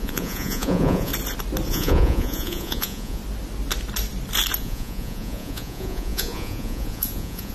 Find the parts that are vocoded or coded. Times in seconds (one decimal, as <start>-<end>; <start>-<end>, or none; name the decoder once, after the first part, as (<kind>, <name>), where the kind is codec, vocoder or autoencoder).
0.0-1.1 (vocoder, Vocos); 1.7-3.2; 4.6-7.5

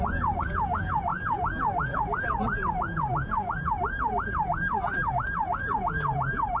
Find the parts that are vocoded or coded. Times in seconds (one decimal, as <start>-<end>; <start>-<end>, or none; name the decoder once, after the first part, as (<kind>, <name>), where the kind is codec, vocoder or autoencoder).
0.0-6.6 (vocoder, Vocos)